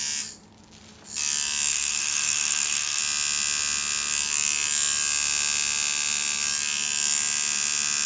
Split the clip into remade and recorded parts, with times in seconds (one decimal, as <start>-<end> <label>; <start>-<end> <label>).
0.0-1.7 recorded; 1.7-3.0 remade; 3.0-8.1 recorded

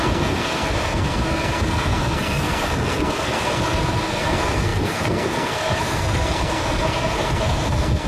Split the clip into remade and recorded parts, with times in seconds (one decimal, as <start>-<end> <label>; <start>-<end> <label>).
0.0-8.1 remade

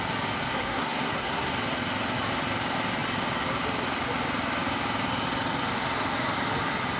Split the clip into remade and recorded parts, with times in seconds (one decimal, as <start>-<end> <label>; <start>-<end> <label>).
0.0-0.5 recorded; 0.5-1.5 remade; 1.5-7.0 recorded

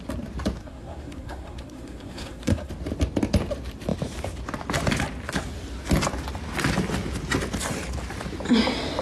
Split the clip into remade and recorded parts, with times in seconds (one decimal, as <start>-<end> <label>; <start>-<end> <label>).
0.0-0.6 recorded; 0.6-2.7 remade; 2.7-9.0 recorded

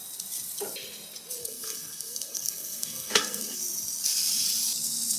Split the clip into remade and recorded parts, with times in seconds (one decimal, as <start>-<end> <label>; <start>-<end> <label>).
0.0-1.4 recorded; 1.4-3.6 remade; 3.6-5.2 recorded

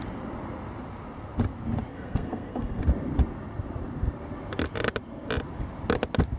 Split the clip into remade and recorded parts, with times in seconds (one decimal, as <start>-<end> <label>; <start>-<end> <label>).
0.0-1.9 recorded; 1.9-2.8 remade; 2.8-6.4 recorded

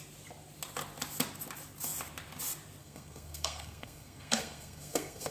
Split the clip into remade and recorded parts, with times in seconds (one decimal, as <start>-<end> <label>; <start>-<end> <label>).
0.0-2.8 recorded; 2.8-5.3 remade